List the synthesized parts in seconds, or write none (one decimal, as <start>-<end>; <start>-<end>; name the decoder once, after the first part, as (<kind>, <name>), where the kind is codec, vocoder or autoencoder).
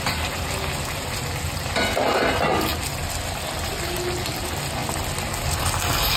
none